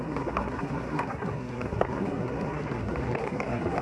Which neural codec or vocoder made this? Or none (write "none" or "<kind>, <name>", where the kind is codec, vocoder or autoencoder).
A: codec, SNAC